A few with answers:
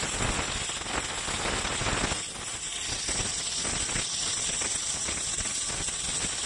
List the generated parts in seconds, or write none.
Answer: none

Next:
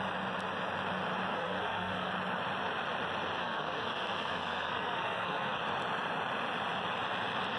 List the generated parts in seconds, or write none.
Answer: 1.3-2.1 (codec, SNAC); 3.4-5.6

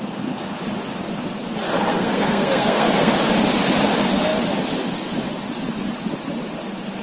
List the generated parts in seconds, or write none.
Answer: 1.9-3.1 (codec, SNAC)

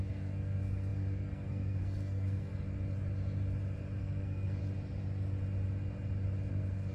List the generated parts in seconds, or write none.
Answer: 0.0-2.5 (codec, SNAC); 4.0-4.6; 6.5-6.9

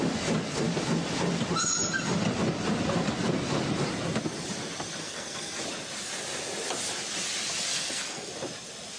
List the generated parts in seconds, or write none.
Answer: 5.0-5.6 (codec, SNAC); 7.7-8.3

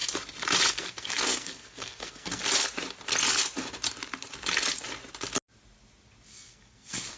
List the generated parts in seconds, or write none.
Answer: 0.7-2.4 (codec, SNAC); 6.3-7.2

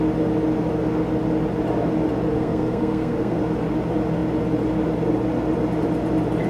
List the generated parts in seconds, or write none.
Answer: 2.3-3.4 (codec, SNAC)